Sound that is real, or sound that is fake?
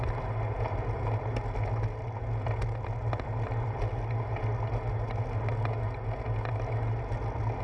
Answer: real